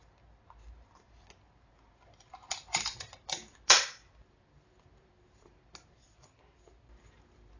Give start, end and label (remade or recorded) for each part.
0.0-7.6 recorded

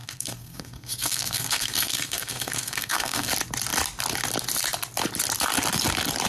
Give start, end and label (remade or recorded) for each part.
0.0-3.3 remade; 3.3-6.3 recorded

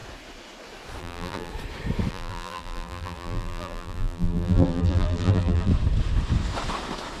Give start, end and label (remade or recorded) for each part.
0.0-1.0 recorded; 1.0-1.5 remade; 1.5-2.1 recorded; 2.1-5.7 remade; 5.7-7.2 recorded